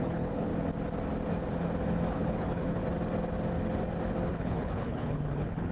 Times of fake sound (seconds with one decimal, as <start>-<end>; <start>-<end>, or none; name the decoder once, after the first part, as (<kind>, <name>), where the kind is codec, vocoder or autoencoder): 0.0-0.5 (codec, HILCodec); 2.1-2.8; 4.3-5.7